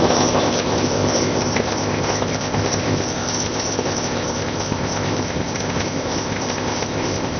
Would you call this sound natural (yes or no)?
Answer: no